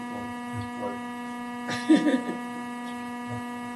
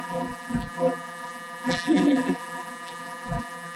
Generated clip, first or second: second